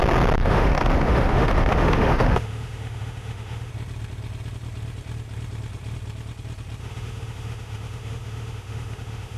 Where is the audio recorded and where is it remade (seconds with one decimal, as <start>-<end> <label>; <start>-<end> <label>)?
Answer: 0.0-0.4 recorded; 0.4-3.7 remade; 3.7-6.8 recorded; 6.8-9.4 remade